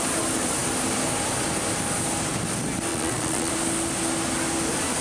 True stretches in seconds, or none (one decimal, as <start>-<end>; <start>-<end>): 0.0-2.9; 3.5-5.0